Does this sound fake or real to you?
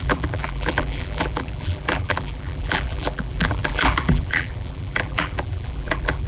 fake